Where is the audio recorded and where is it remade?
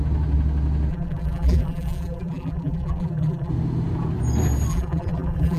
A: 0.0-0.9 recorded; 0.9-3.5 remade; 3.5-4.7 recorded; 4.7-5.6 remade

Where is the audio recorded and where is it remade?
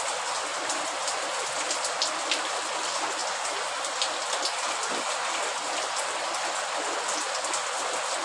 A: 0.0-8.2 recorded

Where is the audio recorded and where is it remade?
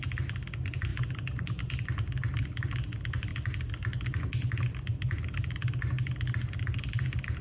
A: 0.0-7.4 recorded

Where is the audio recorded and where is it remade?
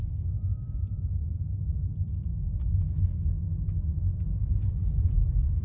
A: 0.0-2.1 remade; 2.1-3.9 recorded; 3.9-5.6 remade